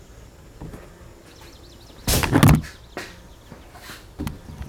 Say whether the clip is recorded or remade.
recorded